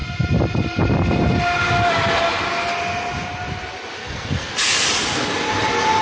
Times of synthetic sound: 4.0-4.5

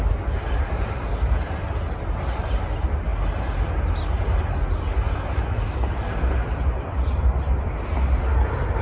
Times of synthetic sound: none

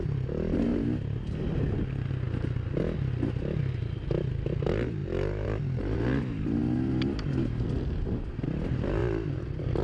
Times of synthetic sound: none

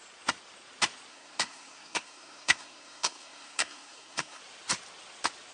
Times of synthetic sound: 1.1-4.4